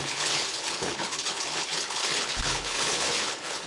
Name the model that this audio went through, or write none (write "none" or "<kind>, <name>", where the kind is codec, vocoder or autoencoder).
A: codec, HILCodec